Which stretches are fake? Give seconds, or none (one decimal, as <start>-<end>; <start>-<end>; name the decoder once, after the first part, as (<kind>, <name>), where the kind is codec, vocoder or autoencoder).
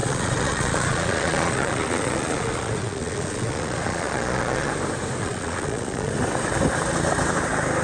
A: 0.0-4.7 (vocoder, Vocos); 5.2-6.1